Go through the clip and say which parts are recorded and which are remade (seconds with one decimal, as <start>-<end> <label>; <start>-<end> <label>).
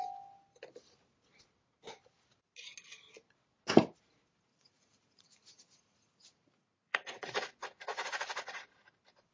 0.0-4.5 recorded; 4.5-7.3 remade; 7.3-7.9 recorded; 7.9-8.6 remade; 8.6-9.3 recorded